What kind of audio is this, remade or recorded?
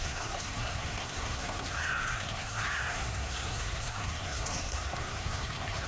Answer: remade